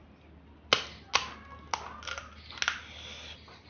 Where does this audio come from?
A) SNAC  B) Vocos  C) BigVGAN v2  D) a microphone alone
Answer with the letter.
D